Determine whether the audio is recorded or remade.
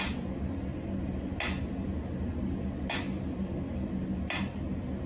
recorded